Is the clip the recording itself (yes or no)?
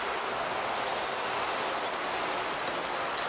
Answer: yes